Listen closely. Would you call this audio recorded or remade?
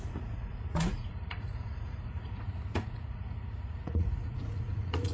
remade